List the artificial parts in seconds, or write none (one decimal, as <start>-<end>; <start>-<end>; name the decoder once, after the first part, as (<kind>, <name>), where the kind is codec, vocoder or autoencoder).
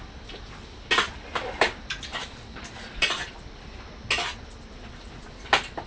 2.1-3.3 (vocoder, BigVGAN v2)